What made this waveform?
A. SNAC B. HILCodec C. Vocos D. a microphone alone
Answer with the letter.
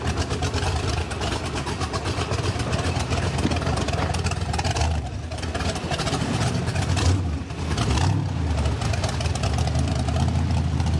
D